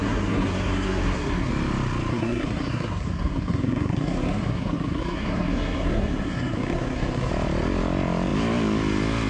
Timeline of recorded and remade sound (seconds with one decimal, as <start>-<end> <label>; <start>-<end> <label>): 0.0-1.5 remade; 1.5-2.1 recorded; 2.1-7.3 remade; 7.3-9.3 recorded